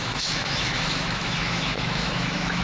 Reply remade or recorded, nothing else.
remade